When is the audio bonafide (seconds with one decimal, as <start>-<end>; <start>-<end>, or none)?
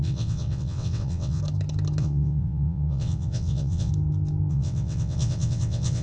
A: 1.4-2.0; 3.9-4.5